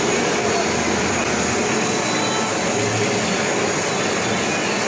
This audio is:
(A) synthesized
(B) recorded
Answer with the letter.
B